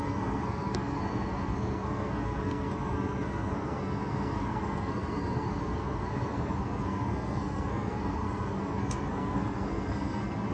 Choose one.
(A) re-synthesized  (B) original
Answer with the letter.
A